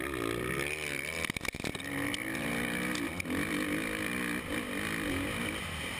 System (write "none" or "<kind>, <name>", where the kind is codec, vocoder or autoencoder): none